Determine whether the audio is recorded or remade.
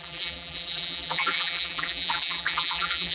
remade